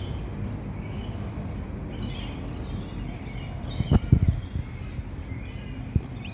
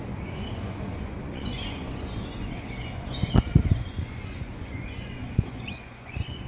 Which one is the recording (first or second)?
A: first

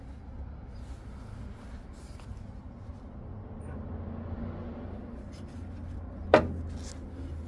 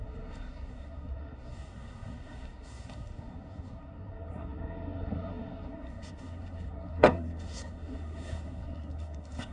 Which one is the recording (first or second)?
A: first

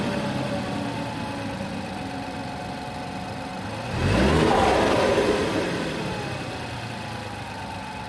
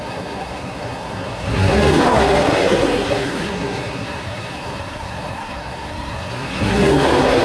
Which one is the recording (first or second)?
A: first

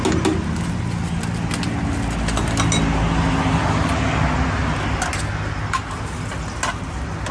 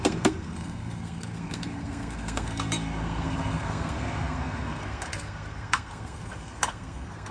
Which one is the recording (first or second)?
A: first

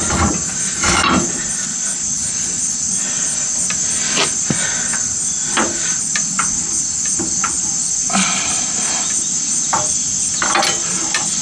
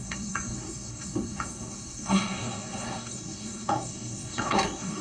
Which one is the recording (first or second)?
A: first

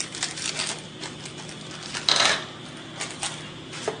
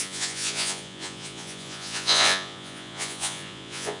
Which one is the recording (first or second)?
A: first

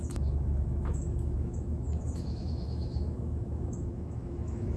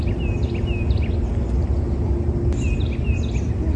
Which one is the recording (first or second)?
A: second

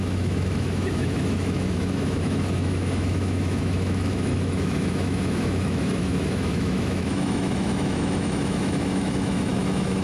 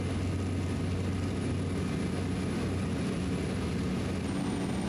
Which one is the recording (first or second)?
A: second